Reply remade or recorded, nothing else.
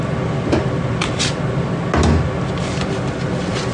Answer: recorded